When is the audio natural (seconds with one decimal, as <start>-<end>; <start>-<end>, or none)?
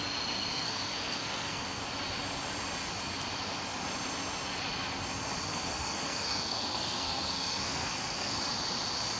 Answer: 0.0-0.5; 1.8-5.5; 8.4-9.2